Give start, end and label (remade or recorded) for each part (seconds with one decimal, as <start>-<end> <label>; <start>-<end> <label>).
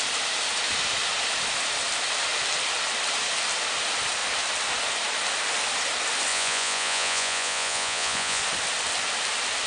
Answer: 0.0-6.3 recorded; 6.3-8.4 remade; 8.4-9.7 recorded